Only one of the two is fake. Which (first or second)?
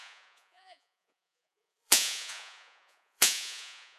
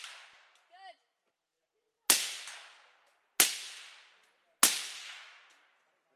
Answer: first